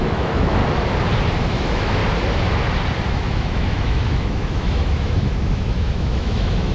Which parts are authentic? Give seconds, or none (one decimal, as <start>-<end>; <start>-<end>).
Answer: 0.6-1.4; 2.0-3.1